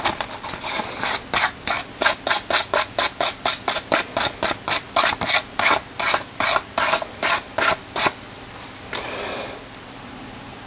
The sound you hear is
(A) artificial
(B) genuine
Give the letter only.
B